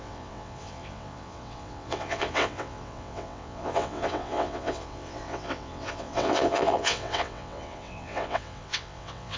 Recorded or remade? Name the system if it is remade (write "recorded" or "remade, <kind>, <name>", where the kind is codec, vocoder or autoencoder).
remade, vocoder, WaveNeXt